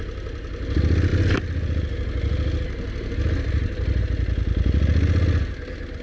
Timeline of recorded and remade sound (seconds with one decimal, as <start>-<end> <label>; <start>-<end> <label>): 0.0-6.0 recorded